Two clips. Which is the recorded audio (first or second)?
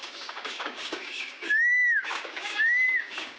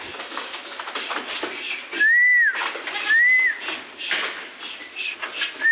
second